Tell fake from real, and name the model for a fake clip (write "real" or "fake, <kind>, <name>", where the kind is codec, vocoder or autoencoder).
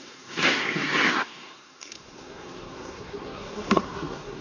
fake, codec, SNAC